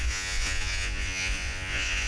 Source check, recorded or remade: remade